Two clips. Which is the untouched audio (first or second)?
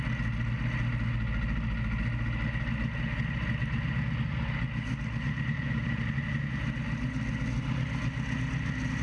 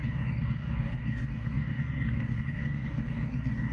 first